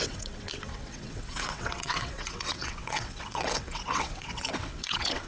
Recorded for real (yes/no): no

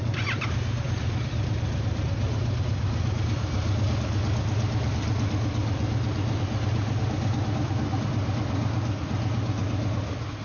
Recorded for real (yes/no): yes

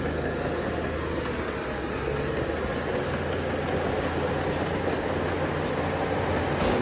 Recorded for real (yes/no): yes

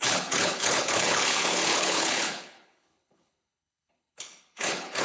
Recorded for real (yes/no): no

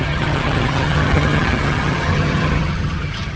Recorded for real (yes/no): no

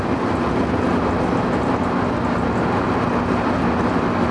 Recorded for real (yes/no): yes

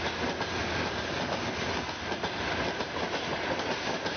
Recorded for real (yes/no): yes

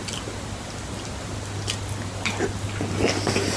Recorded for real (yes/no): yes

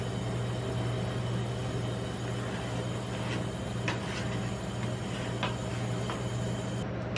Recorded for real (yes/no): yes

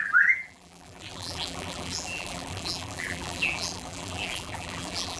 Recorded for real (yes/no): no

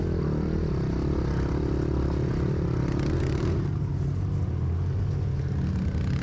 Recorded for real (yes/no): yes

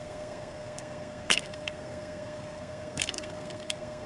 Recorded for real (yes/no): no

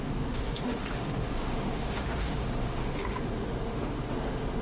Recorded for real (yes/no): no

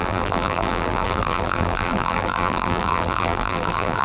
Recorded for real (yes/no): no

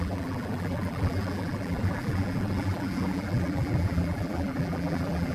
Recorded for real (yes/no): no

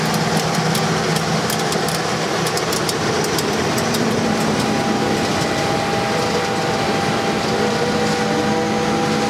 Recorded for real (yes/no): yes